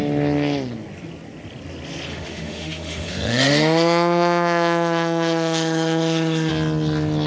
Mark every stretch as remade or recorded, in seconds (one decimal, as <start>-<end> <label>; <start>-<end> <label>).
0.0-2.1 recorded; 2.1-6.5 remade; 6.5-7.3 recorded